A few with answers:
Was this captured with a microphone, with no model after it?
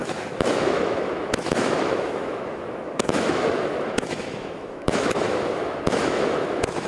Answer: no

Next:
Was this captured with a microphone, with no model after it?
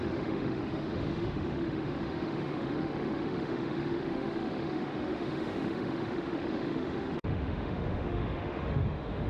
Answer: no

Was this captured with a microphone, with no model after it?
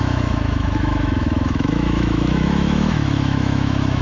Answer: no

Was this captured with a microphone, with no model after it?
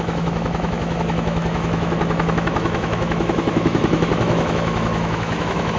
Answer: no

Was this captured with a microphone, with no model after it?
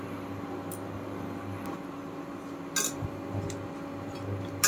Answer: yes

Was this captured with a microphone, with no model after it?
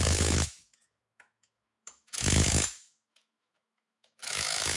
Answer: no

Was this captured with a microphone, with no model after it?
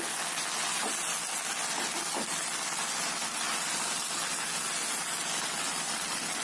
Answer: yes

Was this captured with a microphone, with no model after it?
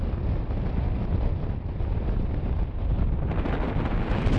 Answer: yes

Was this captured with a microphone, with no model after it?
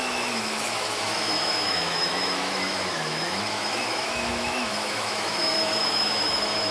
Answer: no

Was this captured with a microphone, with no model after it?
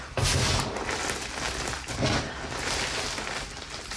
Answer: yes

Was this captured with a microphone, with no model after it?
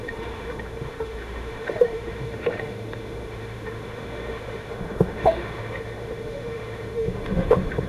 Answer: no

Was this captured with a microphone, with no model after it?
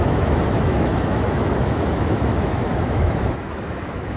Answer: no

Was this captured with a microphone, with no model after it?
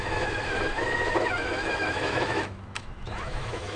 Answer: no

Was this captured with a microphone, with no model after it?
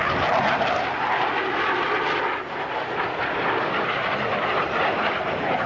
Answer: yes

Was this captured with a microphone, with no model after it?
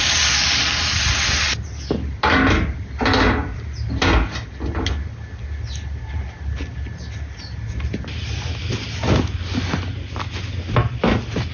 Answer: yes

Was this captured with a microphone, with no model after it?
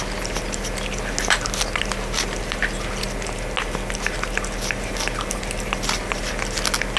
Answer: yes